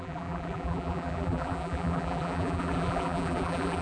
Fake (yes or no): yes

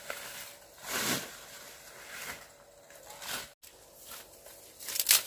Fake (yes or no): no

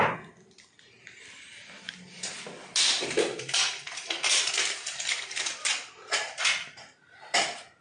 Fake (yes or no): no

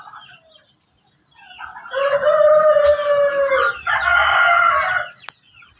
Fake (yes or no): no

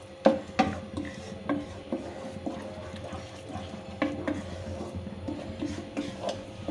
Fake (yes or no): no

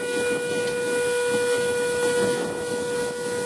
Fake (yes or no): no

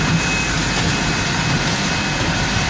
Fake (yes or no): no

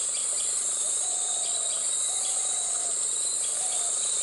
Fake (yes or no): yes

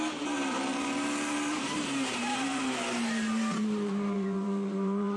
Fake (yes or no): yes